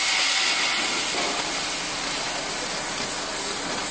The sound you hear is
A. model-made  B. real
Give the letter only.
B